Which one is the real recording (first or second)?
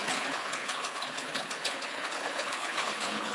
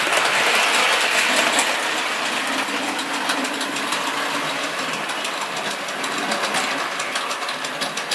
second